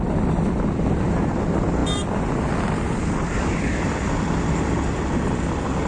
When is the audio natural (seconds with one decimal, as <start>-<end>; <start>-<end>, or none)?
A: 0.0-5.9